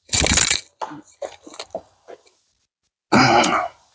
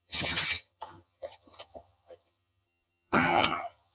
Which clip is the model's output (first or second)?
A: second